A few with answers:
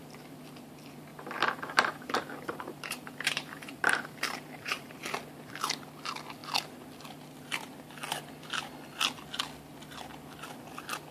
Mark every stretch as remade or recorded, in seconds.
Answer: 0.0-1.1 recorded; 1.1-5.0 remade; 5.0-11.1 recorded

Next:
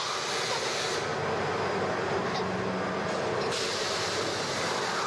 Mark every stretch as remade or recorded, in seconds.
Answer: 0.0-5.1 recorded

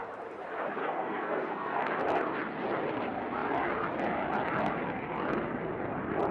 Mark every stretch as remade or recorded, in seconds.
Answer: 0.0-0.8 recorded; 0.8-2.0 remade; 2.0-6.3 recorded

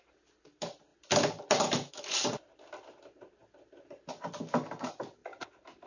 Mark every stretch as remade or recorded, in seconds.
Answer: 0.0-3.4 recorded; 3.4-4.4 remade; 4.4-5.9 recorded

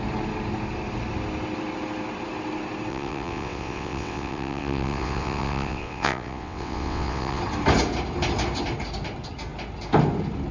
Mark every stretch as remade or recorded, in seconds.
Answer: 0.0-2.9 recorded; 2.9-7.4 remade; 7.4-10.5 recorded